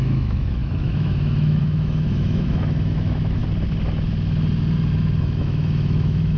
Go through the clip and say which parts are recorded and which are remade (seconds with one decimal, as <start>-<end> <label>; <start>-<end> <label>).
0.0-3.4 remade; 3.4-5.2 recorded; 5.2-6.4 remade